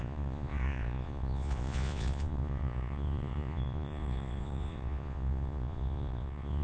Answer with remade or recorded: remade